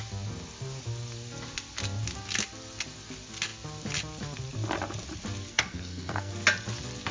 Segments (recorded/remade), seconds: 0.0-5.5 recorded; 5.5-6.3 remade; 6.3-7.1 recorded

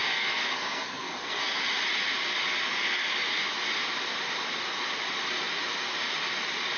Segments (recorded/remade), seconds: 0.0-1.6 remade; 1.6-6.8 recorded

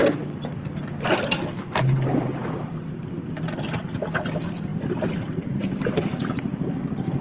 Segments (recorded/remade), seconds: 0.0-1.8 recorded; 1.8-4.7 remade; 4.7-5.2 recorded; 5.2-7.2 remade